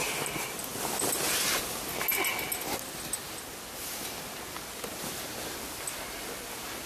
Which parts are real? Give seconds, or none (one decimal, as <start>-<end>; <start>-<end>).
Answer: 0.0-6.9